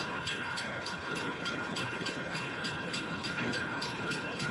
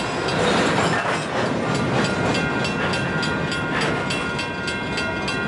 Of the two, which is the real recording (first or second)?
second